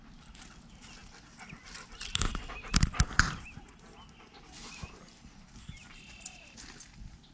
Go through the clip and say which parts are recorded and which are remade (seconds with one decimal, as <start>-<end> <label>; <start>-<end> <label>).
0.0-7.3 recorded